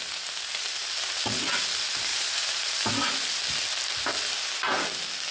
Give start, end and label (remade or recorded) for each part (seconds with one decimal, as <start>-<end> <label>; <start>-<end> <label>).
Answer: 0.0-2.1 recorded; 2.1-2.9 remade; 2.9-5.3 recorded